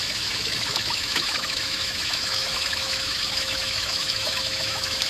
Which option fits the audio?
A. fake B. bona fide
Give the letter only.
A